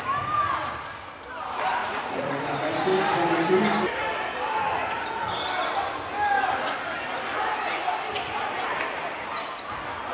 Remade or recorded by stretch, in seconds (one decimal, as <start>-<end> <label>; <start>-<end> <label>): 0.0-1.8 recorded; 1.8-2.4 remade; 2.4-10.1 recorded